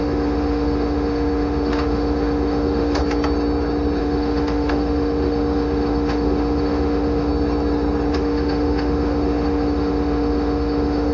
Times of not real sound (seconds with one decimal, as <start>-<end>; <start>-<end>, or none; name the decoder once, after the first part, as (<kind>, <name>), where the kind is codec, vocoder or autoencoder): 0.0-3.0 (autoencoder, DAC-VAE); 4.0-7.3; 8.1-11.1